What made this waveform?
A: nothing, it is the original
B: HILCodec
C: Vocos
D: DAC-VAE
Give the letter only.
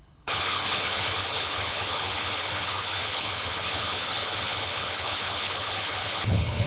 B